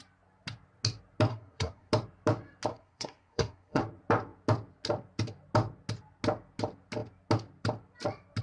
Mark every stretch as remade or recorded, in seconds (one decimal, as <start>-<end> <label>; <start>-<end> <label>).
0.0-1.3 recorded; 1.3-1.9 remade; 1.9-2.7 recorded; 2.7-3.8 remade; 3.8-8.4 recorded